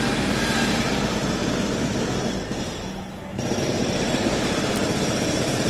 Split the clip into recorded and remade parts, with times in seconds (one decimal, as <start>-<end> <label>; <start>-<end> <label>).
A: 0.0-1.4 remade; 1.4-3.6 recorded; 3.6-5.7 remade